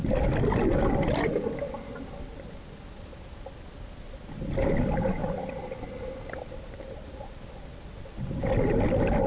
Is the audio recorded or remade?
recorded